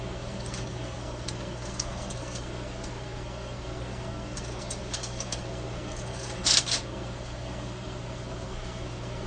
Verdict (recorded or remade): remade